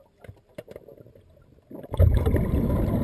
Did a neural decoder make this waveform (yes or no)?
no